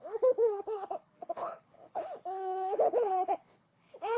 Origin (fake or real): fake